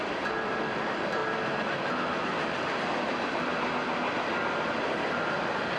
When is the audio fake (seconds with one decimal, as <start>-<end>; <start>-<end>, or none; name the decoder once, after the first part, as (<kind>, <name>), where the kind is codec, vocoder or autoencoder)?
0.0-1.2 (vocoder, BigVGAN v2); 4.7-5.8